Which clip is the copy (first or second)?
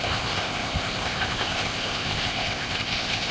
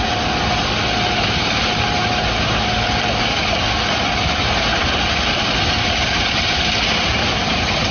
first